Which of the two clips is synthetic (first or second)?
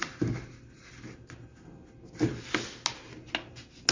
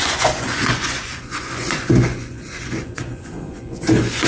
second